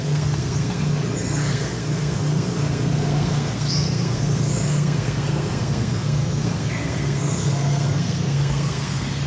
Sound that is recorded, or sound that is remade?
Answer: remade